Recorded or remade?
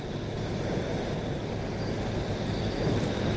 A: recorded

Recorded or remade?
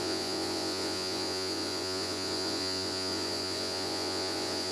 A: remade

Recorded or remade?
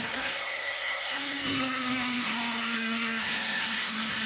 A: remade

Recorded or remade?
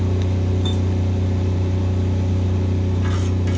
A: recorded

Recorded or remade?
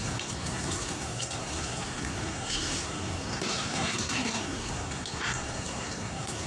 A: remade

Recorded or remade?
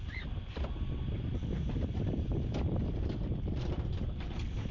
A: remade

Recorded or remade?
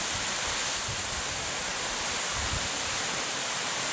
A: recorded